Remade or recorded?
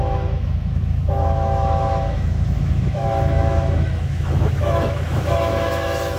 remade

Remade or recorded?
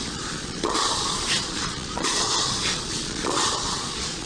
remade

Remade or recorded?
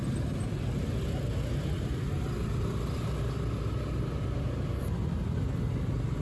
recorded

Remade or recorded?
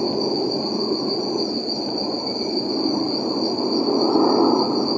recorded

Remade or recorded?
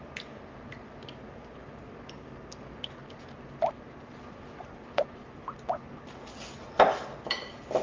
recorded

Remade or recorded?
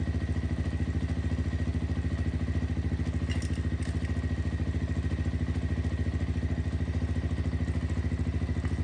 recorded